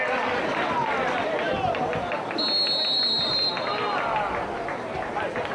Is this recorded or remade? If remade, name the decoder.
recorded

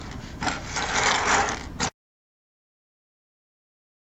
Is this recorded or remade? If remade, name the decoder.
recorded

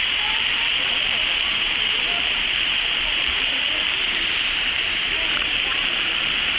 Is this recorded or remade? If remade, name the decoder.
remade, vocoder, BigVGAN v2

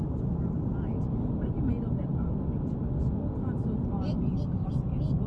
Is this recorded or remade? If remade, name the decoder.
recorded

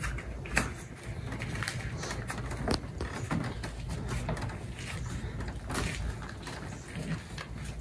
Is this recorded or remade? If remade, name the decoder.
recorded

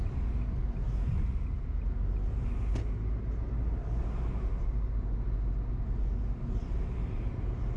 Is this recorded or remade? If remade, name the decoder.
recorded